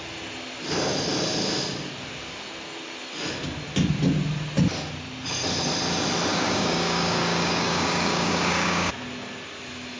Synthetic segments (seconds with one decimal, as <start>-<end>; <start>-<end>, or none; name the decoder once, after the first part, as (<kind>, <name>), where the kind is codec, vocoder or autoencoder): 6.3-8.9 (codec, DAC)